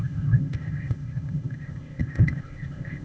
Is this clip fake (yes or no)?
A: yes